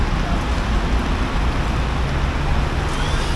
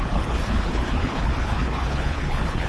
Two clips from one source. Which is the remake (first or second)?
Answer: second